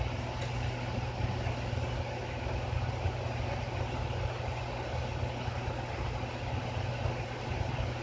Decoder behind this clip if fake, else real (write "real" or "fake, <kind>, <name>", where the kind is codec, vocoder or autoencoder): real